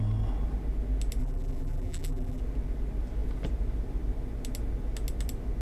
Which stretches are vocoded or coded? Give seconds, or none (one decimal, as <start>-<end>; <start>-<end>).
1.2-2.4